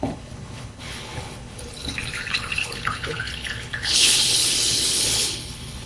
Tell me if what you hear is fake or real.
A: fake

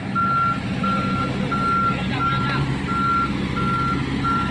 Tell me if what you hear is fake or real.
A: real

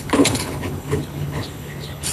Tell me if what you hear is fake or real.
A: fake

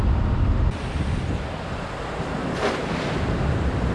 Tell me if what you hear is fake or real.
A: real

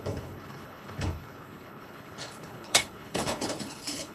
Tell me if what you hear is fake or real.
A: fake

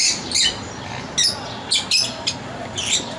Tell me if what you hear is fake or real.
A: real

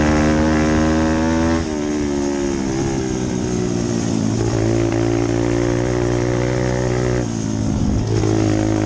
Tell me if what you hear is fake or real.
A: real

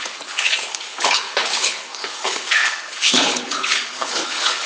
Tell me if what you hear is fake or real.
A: fake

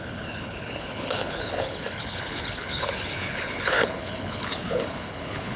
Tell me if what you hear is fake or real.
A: fake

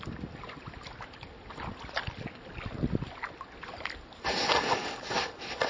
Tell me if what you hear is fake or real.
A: real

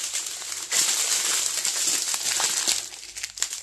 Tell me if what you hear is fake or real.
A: real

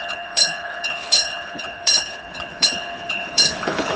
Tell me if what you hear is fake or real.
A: fake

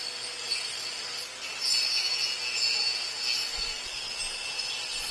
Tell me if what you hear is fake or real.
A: real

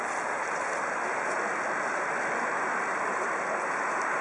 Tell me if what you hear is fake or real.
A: real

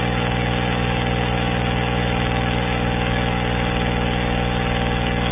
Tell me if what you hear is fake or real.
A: real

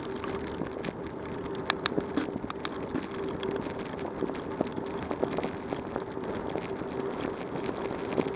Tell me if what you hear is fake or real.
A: real